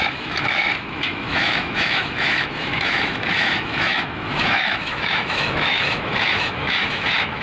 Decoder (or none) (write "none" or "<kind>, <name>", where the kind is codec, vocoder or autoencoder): autoencoder, DAC-VAE